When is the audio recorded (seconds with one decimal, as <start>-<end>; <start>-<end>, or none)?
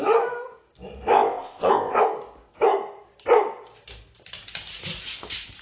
0.0-1.1; 2.0-5.6